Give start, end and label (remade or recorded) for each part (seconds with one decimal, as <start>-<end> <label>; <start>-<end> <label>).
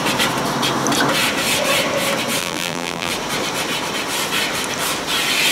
0.0-2.4 recorded; 2.4-3.1 remade; 3.1-5.5 recorded